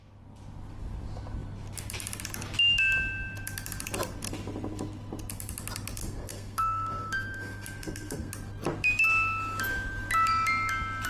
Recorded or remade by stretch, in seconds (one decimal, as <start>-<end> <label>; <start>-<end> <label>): 0.0-6.0 recorded; 6.0-8.3 remade; 8.3-11.1 recorded

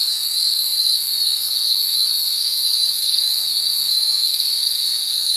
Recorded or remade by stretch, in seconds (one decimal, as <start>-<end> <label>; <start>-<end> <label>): 0.0-5.4 remade

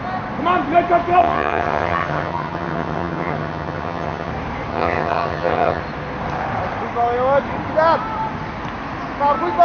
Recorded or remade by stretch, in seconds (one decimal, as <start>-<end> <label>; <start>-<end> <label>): 0.0-1.2 recorded; 1.2-4.3 remade; 4.3-4.7 recorded; 4.7-5.8 remade; 5.8-9.6 recorded

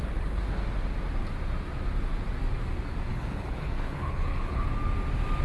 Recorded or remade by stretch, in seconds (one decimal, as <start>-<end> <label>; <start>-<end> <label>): 0.0-3.1 recorded; 3.1-4.7 remade; 4.7-5.4 recorded

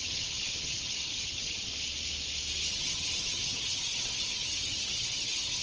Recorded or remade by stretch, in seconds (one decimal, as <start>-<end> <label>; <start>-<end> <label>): 0.0-1.7 remade; 1.7-2.7 recorded; 2.7-5.6 remade

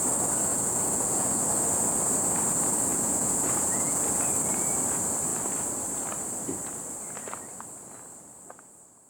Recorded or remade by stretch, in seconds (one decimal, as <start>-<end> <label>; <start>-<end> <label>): 0.0-0.5 recorded; 0.5-1.4 remade; 1.4-2.9 recorded; 2.9-4.0 remade; 4.0-9.1 recorded